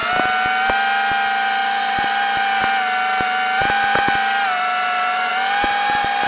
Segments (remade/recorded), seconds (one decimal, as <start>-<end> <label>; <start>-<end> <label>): 0.0-1.6 recorded; 1.6-2.6 remade; 2.6-3.6 recorded; 3.6-5.3 remade; 5.3-6.3 recorded